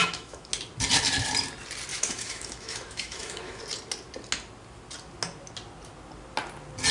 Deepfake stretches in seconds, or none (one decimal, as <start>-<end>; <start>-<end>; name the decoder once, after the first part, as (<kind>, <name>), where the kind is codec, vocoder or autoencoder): 0.0-0.5 (autoencoder, DAC-VAE); 1.9-3.6